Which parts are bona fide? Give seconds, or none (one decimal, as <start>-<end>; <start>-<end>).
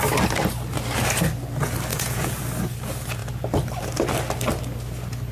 0.0-1.9; 2.4-5.3